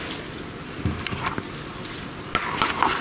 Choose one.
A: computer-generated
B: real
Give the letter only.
B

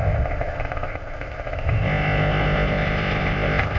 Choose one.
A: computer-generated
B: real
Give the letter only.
A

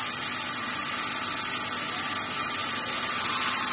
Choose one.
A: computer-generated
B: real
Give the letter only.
B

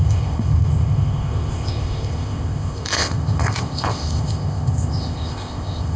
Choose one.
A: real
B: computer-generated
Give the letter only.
B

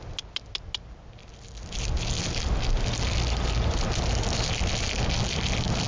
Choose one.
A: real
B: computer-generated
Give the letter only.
A